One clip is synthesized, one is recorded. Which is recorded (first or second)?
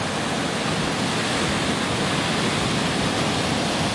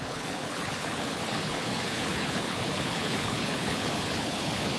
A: first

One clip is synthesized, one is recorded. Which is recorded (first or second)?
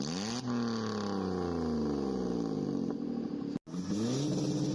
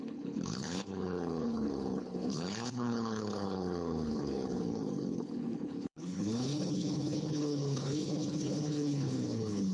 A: first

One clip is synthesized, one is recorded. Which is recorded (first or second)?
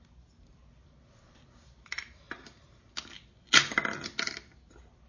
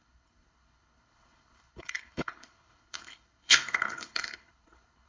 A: first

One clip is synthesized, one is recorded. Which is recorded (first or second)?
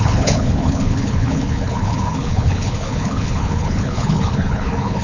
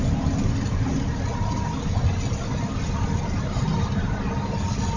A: second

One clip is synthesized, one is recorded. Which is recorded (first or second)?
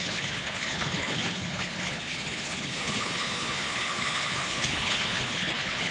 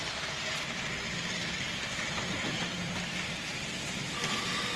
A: second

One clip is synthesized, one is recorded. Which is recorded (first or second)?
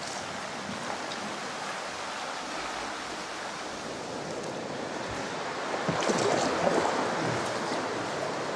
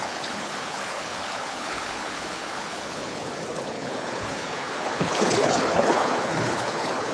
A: first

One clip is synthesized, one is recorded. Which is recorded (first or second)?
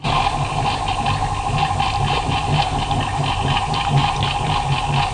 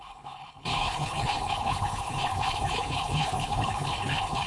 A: first